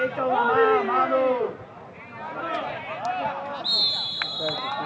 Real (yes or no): yes